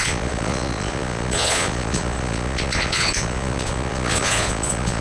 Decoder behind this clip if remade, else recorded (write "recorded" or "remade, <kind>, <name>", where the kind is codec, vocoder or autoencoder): remade, vocoder, Vocos